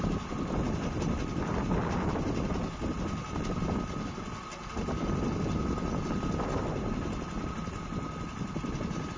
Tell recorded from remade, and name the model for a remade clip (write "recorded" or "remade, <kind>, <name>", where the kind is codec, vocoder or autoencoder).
recorded